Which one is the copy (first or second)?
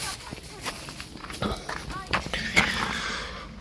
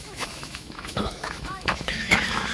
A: second